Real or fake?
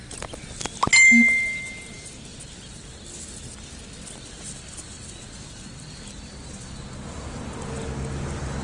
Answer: real